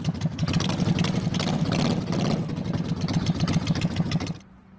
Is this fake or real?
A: real